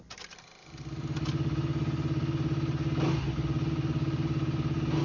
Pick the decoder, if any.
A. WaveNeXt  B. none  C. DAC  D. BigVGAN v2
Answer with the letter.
B